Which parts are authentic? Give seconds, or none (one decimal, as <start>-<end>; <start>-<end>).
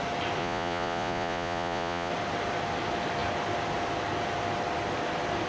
0.0-0.4; 2.1-5.5